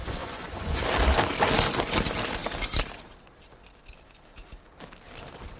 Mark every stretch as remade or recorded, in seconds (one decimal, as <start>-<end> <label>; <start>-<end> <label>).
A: 0.0-0.8 remade; 0.8-5.6 recorded

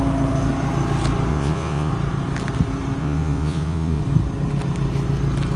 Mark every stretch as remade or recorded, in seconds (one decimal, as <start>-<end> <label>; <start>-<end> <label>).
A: 0.0-1.3 recorded; 1.3-1.9 remade; 1.9-3.0 recorded; 3.0-4.0 remade; 4.0-5.6 recorded

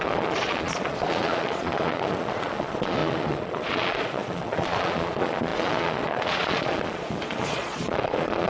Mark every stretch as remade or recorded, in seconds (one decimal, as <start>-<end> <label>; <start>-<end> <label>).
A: 0.0-8.5 remade